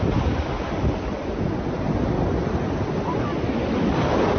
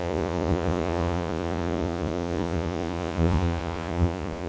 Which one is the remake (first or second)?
second